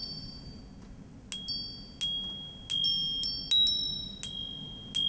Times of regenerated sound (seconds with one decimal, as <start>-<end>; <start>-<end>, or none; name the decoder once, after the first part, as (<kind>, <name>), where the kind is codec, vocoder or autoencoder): 0.0-0.6 (vocoder, BigVGAN v2)